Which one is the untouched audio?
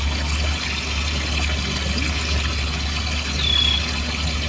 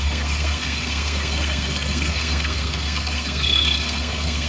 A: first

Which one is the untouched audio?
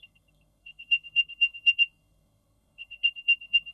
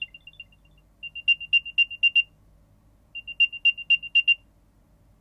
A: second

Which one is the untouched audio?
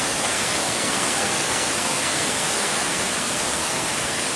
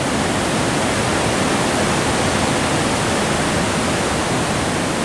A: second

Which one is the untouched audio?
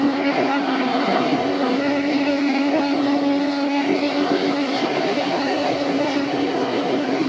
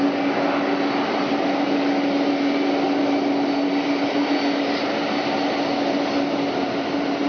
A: second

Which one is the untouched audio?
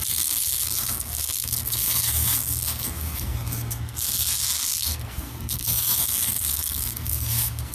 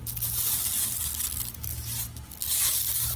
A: second